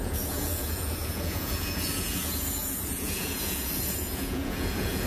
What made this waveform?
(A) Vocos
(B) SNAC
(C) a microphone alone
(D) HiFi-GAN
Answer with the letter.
A